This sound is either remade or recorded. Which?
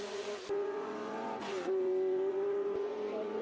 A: remade